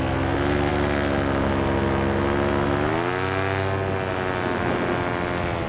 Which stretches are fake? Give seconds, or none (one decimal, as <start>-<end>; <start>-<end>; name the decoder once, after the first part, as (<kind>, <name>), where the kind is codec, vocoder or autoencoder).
none